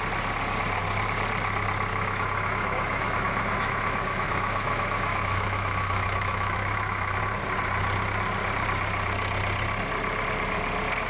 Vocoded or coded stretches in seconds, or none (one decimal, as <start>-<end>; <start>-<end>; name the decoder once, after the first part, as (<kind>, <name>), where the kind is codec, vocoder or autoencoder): 1.9-7.2 (autoencoder, DAC-VAE)